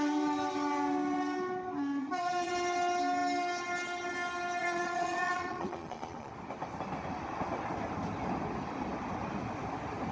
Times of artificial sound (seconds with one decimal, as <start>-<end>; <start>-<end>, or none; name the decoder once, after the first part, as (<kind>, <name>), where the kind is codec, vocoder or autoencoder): 2.0-2.5 (vocoder, Vocos); 4.6-6.3